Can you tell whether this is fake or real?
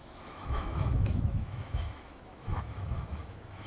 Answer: fake